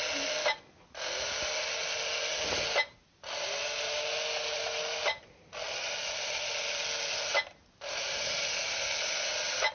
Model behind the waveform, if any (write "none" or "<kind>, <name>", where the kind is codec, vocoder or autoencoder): none